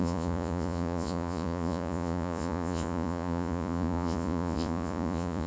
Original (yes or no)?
no